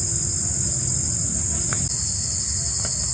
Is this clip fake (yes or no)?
no